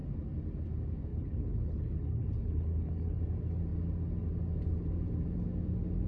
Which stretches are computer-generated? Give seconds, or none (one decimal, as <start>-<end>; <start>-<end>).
1.1-3.2